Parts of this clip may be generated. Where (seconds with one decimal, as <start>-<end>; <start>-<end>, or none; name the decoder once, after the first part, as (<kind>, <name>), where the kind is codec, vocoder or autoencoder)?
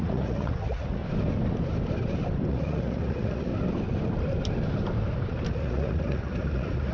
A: 0.0-1.0 (vocoder, Vocos); 2.5-3.5; 5.5-6.9